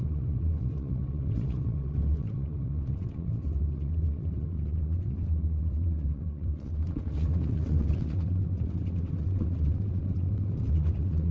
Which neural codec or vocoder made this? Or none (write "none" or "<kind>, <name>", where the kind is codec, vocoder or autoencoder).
vocoder, WaveNeXt